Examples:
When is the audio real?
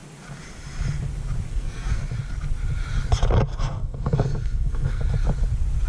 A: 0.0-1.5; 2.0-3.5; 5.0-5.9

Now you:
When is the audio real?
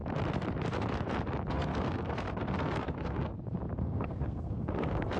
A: 0.0-1.5; 3.3-3.8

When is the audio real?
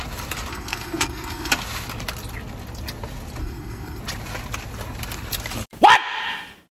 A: 0.0-0.5; 1.5-3.4; 4.0-6.7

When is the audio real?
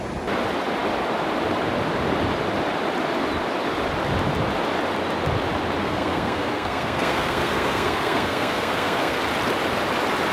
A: 0.0-5.8; 9.2-10.3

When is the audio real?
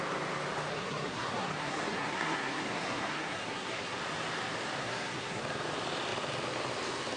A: 0.0-0.7; 4.0-4.8; 5.4-7.2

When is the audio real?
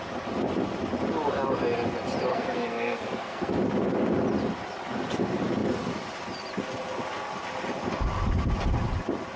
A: 0.0-2.3; 3.5-9.4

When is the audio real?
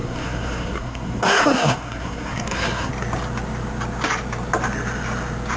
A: 2.9-5.6